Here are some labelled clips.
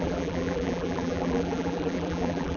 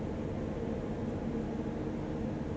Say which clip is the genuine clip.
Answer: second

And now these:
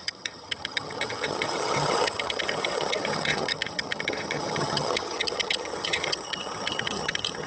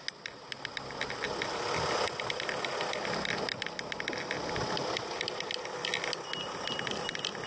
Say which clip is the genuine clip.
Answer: second